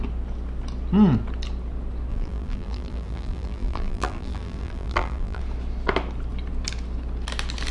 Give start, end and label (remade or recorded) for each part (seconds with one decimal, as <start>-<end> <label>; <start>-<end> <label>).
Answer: 0.0-2.1 recorded; 2.1-5.4 remade; 5.4-7.7 recorded